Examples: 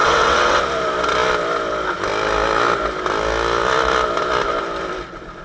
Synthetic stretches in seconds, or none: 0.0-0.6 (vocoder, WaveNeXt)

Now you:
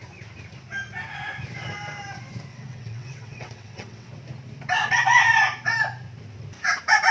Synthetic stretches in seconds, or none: 2.5-4.1 (vocoder, WaveNeXt)

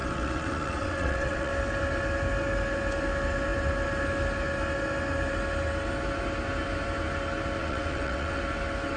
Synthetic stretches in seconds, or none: 0.0-1.5 (vocoder, WaveNeXt); 7.6-8.4

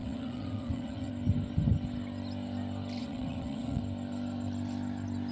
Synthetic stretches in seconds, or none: 0.0-1.1 (vocoder, WaveNeXt); 3.0-3.8

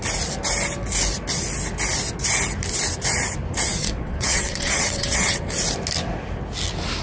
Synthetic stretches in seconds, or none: 3.8-5.4 (vocoder, WaveNeXt)

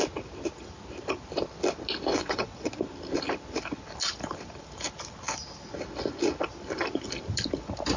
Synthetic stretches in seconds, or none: 2.1-2.7 (vocoder, WaveNeXt)

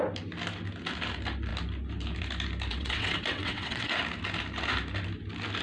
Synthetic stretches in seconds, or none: 2.7-4.0 (vocoder, WaveNeXt)